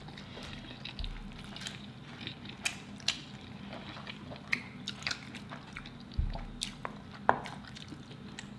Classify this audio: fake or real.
real